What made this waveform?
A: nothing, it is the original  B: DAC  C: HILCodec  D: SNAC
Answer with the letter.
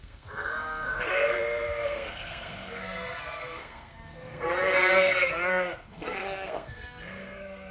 D